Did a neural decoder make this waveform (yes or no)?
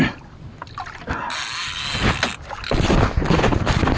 no